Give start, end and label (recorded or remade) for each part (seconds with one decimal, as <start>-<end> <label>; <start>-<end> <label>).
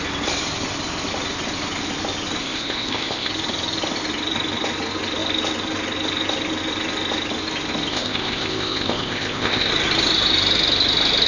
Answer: 0.0-2.4 recorded; 2.4-3.3 remade; 3.3-7.9 recorded; 7.9-9.7 remade; 9.7-11.3 recorded